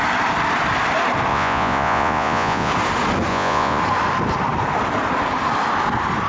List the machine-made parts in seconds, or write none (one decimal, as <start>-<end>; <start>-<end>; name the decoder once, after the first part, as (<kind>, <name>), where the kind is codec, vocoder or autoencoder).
1.3-2.7 (vocoder, Vocos); 3.3-3.8